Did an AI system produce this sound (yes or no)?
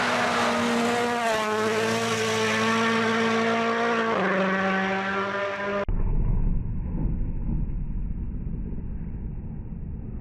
no